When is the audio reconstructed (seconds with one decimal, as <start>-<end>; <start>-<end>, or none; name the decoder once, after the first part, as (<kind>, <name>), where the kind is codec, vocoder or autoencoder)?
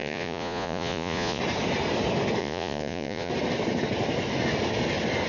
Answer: 0.0-1.4 (vocoder, Vocos); 2.4-3.3